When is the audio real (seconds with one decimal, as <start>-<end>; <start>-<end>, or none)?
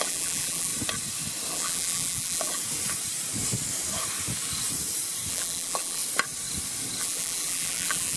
0.7-1.5; 2.6-5.3; 6.0-7.0